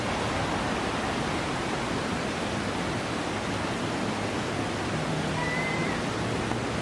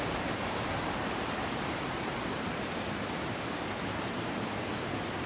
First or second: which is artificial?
second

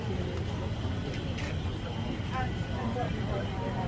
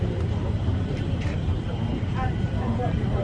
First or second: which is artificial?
second